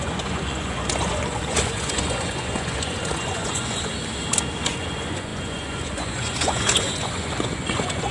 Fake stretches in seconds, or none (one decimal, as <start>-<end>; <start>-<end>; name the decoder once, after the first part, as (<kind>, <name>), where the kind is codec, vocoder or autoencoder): 0.0-3.9 (vocoder, Vocos); 4.6-8.1